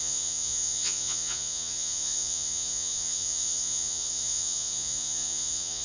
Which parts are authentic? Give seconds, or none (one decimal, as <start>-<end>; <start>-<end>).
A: none